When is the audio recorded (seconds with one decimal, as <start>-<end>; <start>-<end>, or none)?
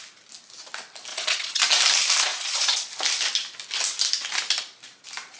0.0-1.1; 1.6-2.3; 2.9-5.4